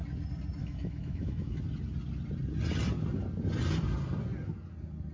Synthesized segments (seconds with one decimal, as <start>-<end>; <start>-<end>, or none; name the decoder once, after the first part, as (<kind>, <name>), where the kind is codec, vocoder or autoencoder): 0.6-1.6 (autoencoder, DAC-VAE)